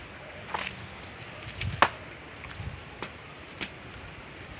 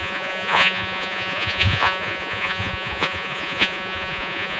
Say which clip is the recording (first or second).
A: first